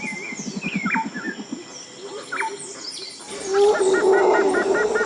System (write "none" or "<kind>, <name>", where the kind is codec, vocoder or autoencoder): none